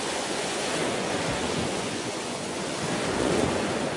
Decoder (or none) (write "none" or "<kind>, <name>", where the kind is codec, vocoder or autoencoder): vocoder, Vocos